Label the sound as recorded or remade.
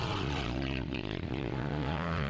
remade